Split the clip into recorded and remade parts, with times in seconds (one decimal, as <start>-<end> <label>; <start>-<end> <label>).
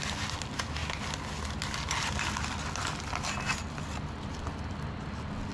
0.0-5.5 recorded